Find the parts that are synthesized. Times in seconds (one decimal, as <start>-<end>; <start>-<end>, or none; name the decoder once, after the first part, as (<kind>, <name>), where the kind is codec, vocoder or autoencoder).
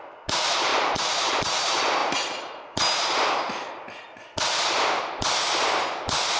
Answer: none